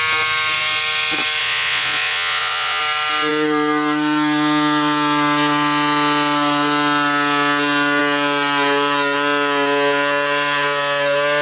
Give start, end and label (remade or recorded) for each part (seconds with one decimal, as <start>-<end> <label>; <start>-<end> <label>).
0.0-1.4 recorded; 1.4-2.8 remade; 2.8-11.4 recorded

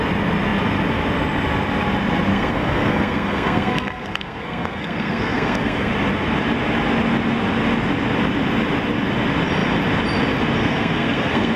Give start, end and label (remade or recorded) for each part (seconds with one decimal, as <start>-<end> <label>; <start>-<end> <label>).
0.0-2.3 recorded; 2.3-5.9 remade; 5.9-10.6 recorded; 10.6-11.6 remade